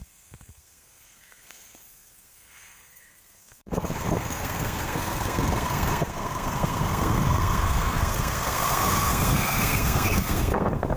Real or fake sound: fake